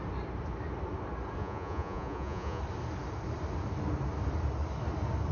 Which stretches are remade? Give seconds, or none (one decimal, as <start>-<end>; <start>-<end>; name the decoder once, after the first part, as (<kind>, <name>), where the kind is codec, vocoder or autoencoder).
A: 1.4-2.6 (vocoder, Vocos)